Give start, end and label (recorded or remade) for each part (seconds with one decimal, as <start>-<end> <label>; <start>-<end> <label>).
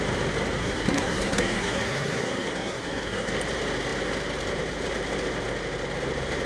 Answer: 0.0-0.6 recorded; 0.6-3.3 remade; 3.3-6.5 recorded